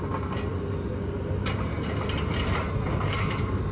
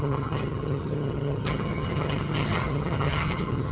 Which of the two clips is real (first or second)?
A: first